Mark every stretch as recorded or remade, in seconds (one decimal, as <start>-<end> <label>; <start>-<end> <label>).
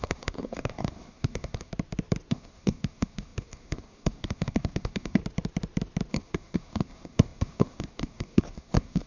0.0-1.7 remade; 1.7-2.3 recorded; 2.3-5.2 remade; 5.2-6.1 recorded; 6.1-9.1 remade